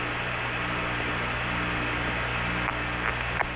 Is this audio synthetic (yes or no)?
no